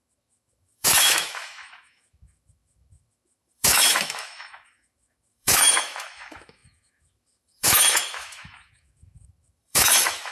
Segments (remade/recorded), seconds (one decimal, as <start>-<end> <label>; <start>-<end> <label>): 0.0-10.3 remade